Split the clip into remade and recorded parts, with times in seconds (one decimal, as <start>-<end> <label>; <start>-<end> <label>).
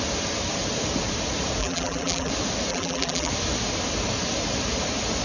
0.0-1.6 recorded; 1.6-2.3 remade; 2.3-2.7 recorded; 2.7-3.3 remade; 3.3-5.2 recorded